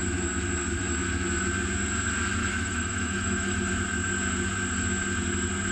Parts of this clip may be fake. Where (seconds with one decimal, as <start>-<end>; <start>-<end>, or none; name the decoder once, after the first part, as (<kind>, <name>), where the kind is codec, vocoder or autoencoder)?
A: 2.4-3.7 (autoencoder, DAC-VAE)